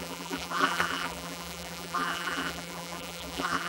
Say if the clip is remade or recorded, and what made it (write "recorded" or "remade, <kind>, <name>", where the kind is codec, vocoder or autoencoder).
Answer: remade, vocoder, BigVGAN v2